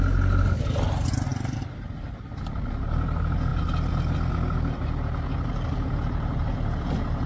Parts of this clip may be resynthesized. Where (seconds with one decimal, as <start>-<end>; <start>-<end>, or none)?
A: none